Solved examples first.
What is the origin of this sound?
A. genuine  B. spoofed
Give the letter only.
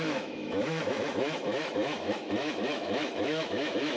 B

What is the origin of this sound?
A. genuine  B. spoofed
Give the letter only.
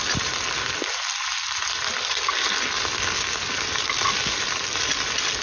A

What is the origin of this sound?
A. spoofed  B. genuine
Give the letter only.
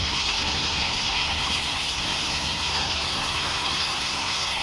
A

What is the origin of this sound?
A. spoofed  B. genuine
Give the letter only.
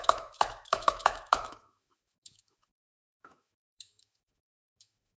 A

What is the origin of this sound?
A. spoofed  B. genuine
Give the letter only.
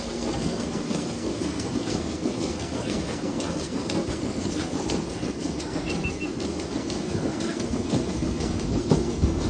A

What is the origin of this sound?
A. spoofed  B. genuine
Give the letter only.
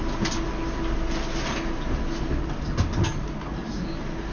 B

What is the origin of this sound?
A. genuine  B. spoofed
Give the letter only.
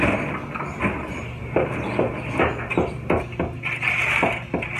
A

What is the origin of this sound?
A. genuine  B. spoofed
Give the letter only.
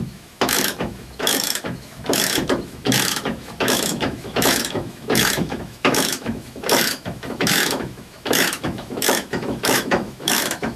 B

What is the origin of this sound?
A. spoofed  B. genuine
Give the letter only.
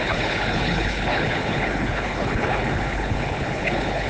A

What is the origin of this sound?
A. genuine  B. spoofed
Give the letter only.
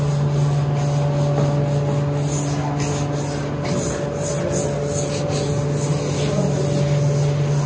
A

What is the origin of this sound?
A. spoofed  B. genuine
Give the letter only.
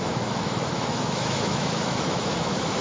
A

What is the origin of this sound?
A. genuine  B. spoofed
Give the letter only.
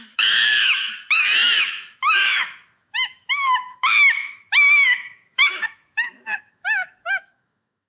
B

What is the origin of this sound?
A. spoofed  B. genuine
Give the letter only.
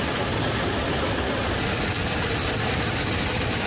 B